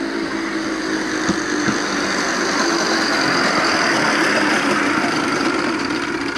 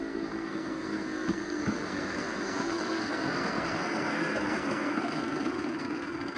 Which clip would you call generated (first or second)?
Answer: second